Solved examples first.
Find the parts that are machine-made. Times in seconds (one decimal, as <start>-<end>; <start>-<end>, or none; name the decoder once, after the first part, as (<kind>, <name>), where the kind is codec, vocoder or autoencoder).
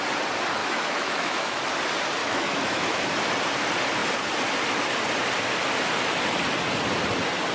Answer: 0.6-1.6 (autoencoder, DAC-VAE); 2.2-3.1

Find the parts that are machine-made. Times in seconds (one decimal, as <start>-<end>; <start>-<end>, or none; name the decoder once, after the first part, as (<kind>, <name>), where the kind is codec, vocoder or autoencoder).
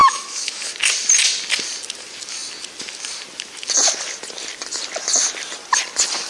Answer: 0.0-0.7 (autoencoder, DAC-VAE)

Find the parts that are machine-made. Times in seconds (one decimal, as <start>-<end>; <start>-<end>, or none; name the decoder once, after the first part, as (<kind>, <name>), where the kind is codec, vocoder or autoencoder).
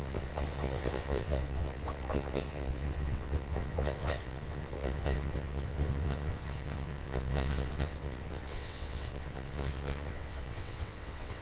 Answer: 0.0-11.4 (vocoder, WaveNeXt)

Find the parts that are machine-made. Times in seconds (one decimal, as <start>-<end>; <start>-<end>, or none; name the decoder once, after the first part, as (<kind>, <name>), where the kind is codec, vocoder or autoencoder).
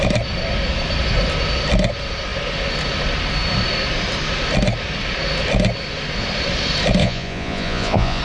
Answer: 7.0-8.2 (vocoder, Vocos)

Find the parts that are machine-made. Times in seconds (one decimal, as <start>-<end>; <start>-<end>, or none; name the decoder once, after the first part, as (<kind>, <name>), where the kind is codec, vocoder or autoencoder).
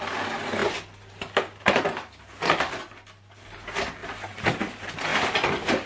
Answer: 0.6-2.8 (vocoder, BigVGAN v2); 4.0-4.6; 5.1-5.9